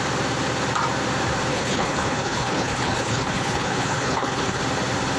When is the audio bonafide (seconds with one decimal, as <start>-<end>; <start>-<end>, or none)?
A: 0.0-1.5; 4.6-5.2